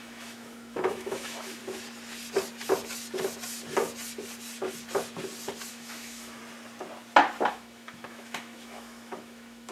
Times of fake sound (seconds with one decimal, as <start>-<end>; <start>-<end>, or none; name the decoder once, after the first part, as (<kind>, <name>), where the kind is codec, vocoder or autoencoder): 0.0-1.6 (autoencoder, DAC-VAE); 5.7-6.4; 7.5-9.7